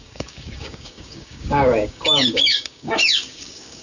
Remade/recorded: remade